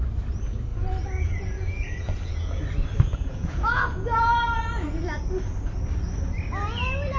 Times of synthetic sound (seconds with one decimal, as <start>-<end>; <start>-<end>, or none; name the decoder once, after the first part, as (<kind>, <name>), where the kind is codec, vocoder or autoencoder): 0.7-2.6 (vocoder, Vocos); 3.1-5.2